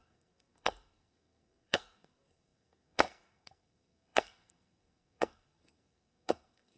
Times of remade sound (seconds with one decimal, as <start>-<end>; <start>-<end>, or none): 0.0-6.8